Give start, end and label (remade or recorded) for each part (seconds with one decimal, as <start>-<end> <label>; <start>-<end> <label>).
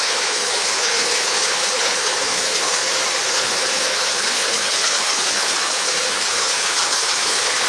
0.0-2.8 remade; 2.8-3.3 recorded; 3.3-7.7 remade